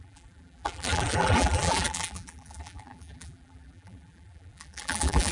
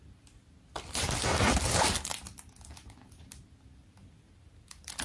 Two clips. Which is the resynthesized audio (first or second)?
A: first